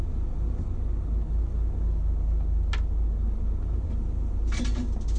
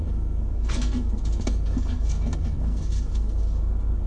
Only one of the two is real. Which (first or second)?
first